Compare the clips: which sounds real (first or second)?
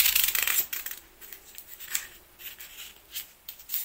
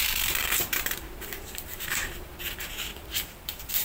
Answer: first